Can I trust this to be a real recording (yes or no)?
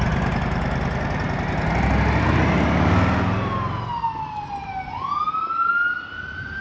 yes